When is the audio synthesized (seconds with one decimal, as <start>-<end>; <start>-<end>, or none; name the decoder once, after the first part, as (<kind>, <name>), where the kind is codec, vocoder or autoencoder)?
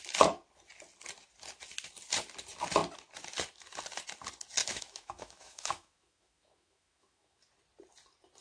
4.6-7.4 (autoencoder, DAC-VAE)